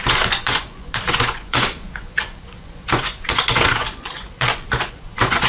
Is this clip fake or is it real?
fake